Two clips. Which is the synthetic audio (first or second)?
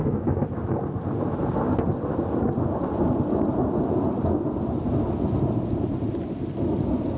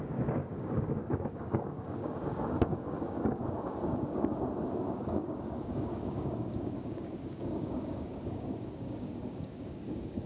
second